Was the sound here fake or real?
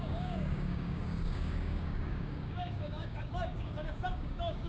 fake